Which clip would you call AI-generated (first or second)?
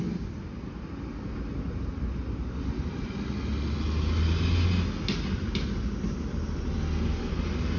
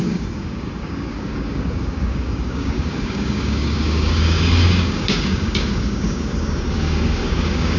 second